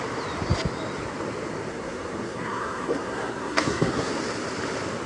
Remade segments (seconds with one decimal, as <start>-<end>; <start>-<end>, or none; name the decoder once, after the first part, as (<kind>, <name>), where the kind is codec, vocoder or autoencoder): 1.7-4.1 (codec, SNAC)

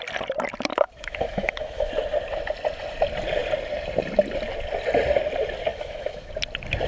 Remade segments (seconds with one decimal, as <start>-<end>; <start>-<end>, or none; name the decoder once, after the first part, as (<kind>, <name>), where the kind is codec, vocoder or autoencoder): 0.7-1.9 (autoencoder, DAC-VAE); 5.7-6.3

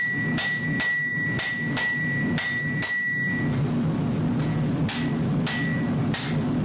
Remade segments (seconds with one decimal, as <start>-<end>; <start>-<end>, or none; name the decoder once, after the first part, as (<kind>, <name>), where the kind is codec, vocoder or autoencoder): none